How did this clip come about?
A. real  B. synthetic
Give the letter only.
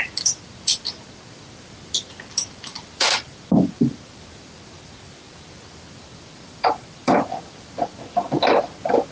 B